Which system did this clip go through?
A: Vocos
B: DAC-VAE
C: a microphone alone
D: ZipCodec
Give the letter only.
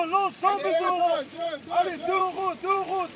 A